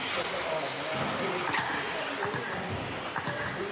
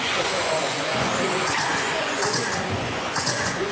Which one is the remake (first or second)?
second